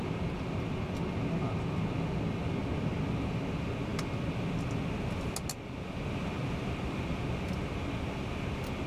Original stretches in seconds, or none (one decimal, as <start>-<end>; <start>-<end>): 0.0-8.9